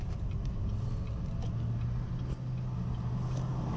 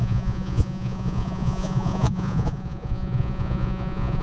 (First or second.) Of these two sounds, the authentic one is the first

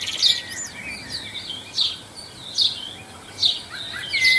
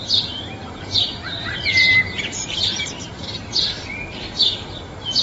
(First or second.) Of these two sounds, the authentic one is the first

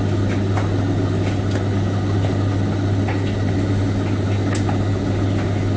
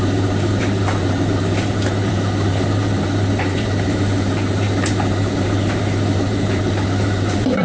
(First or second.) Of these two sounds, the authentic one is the first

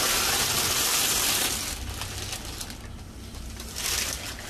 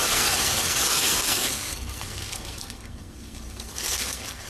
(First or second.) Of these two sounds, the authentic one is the first